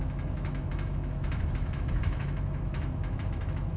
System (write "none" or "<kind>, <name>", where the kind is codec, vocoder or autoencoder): autoencoder, DAC-VAE